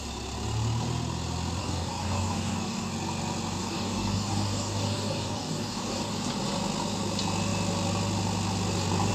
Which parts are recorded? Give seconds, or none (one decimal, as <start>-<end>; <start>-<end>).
0.0-1.6; 2.9-3.6; 6.1-9.1